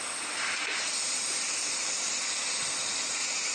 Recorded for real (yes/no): yes